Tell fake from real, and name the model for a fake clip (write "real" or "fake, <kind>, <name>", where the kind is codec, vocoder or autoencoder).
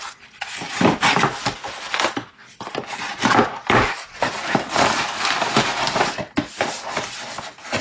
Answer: real